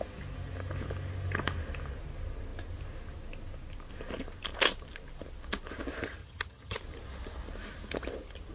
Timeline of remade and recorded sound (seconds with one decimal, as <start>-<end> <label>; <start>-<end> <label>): 0.0-6.2 recorded; 6.2-6.8 remade; 6.8-8.5 recorded